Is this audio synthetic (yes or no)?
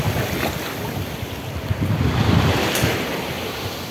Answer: no